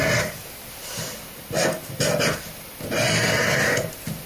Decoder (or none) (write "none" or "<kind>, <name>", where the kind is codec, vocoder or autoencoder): none